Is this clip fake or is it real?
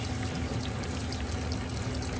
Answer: real